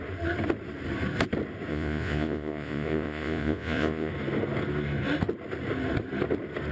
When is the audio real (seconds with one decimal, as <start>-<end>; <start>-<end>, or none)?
0.0-1.7; 4.1-6.7